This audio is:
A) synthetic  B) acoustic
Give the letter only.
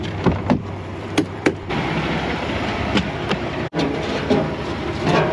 A